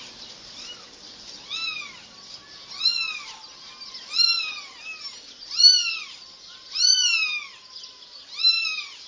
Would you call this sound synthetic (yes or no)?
no